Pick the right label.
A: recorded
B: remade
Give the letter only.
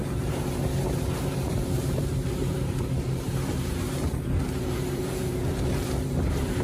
B